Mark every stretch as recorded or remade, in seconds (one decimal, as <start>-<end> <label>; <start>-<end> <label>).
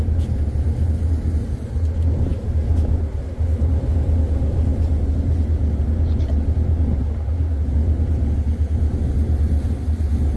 0.0-10.4 recorded